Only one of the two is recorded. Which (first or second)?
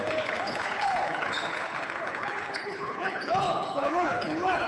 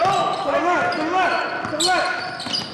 second